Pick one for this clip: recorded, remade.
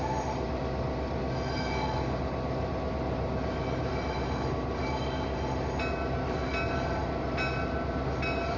recorded